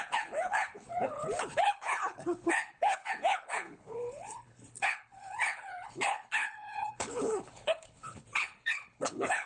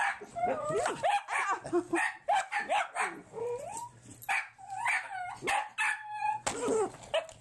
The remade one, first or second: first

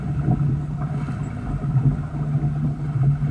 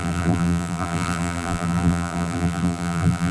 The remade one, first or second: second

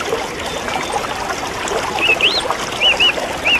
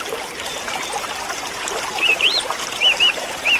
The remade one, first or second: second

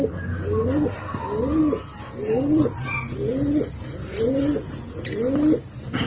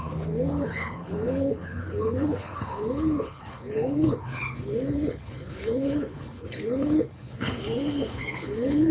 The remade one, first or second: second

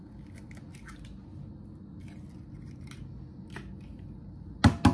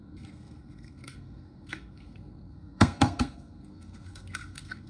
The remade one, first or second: second